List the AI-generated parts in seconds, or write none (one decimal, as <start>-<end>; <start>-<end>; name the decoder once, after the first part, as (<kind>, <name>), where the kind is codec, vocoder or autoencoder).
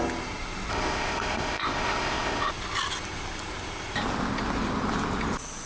0.7-2.5 (codec, ZipCodec)